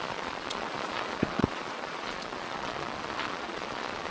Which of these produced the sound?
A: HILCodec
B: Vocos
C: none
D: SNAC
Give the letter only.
B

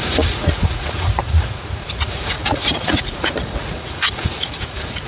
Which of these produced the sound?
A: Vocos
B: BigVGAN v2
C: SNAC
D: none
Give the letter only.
A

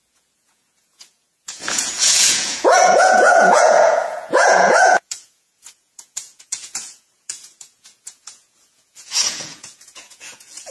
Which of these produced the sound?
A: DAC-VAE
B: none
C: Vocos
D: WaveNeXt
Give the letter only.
C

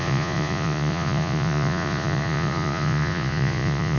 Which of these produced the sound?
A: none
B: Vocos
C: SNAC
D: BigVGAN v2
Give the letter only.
B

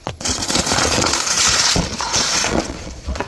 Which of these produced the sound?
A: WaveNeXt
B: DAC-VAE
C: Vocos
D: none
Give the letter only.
C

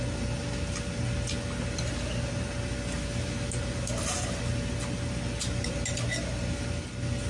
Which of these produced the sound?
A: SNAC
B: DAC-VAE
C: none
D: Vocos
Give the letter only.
C